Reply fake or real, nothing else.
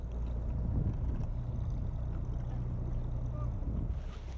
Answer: real